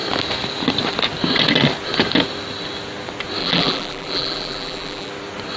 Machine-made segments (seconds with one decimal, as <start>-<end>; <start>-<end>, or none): 3.4-5.1